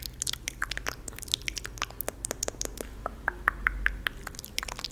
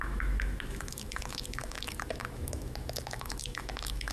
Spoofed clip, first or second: second